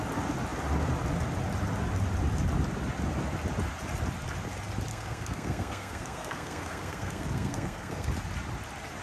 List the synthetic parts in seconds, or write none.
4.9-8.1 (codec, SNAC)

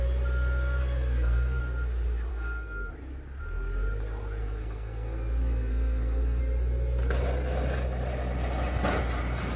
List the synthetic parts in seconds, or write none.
0.8-1.6 (codec, SNAC); 2.3-2.9; 4.4-6.4

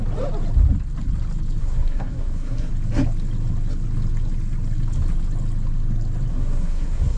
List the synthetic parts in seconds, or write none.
1.6-2.7 (codec, SNAC); 6.3-7.2

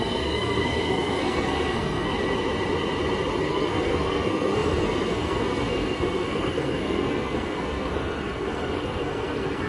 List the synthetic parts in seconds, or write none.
0.0-2.1 (codec, SNAC); 3.5-9.7

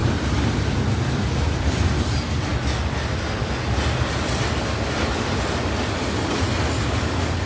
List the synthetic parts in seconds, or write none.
none

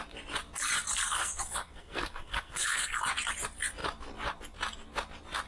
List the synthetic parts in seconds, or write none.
1.0-3.0 (codec, SNAC)

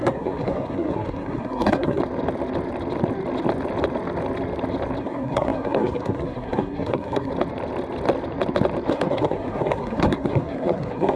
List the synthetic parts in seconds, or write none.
0.0-2.0 (codec, SNAC); 5.0-7.3; 8.9-11.2

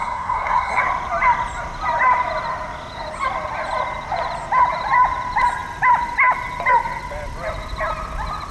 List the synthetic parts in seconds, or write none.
0.0-0.8 (codec, SNAC)